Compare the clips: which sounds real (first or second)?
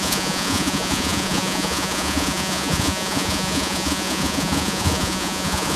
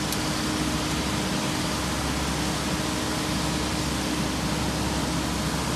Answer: second